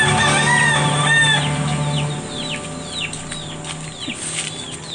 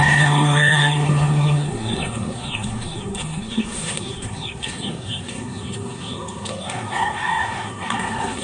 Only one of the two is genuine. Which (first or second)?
first